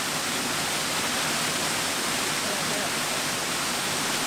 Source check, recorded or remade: recorded